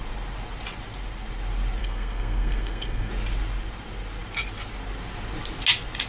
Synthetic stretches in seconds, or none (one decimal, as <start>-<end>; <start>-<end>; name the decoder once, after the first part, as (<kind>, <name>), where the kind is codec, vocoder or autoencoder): 1.8-3.1 (codec, SNAC)